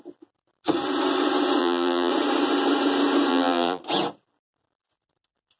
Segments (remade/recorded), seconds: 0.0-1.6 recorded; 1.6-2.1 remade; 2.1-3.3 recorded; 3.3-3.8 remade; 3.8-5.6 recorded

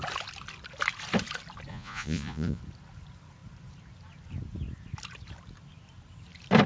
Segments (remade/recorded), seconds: 0.0-1.7 recorded; 1.7-2.6 remade; 2.6-6.7 recorded

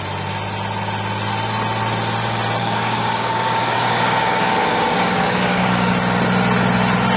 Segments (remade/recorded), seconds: 0.0-2.6 recorded; 2.6-5.9 remade; 5.9-7.2 recorded